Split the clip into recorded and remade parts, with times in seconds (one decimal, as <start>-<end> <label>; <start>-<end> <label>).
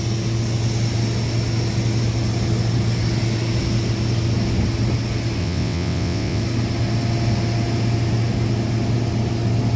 0.0-5.4 recorded; 5.4-6.4 remade; 6.4-9.8 recorded